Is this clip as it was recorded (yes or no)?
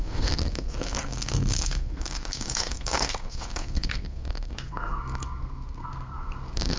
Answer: no